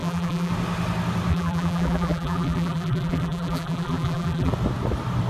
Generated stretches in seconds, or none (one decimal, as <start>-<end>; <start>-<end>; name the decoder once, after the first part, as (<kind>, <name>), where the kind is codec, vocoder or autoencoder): 0.0-0.5 (vocoder, BigVGAN v2); 1.3-4.5